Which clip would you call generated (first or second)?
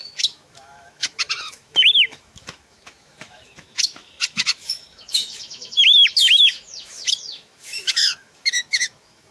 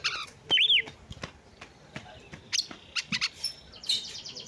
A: first